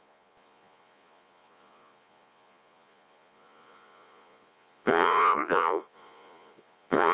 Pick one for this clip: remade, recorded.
remade